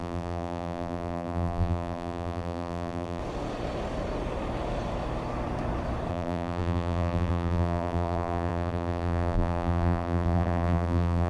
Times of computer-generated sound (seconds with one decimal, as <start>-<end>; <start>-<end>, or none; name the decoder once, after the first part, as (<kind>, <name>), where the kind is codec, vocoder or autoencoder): 0.0-3.2 (vocoder, BigVGAN v2); 6.1-11.3